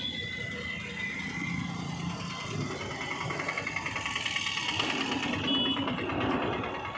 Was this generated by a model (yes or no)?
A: no